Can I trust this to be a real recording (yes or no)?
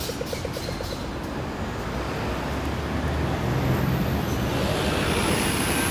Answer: yes